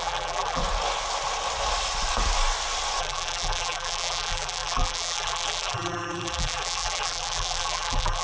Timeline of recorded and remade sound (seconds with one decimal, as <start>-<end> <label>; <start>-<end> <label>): 0.0-0.6 remade; 0.6-3.0 recorded; 3.0-8.2 remade